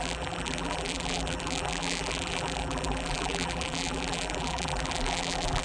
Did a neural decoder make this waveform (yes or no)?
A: yes